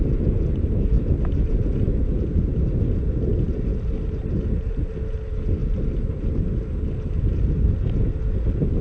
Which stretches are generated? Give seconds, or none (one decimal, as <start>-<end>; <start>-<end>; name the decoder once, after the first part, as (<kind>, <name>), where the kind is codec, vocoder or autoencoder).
none